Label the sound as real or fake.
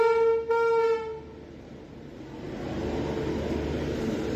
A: real